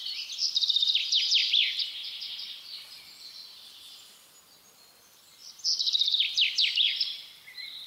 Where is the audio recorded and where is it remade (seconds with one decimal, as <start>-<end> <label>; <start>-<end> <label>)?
0.0-0.4 recorded; 0.4-1.2 remade; 1.2-5.4 recorded; 5.4-7.4 remade; 7.4-7.9 recorded